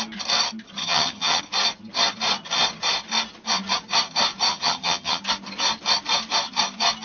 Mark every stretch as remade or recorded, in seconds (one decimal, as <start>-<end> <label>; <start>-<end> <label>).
0.0-0.8 recorded; 0.8-1.4 remade; 1.4-4.5 recorded; 4.5-5.2 remade; 5.2-7.0 recorded